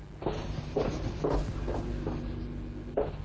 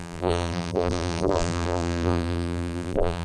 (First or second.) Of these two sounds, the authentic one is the first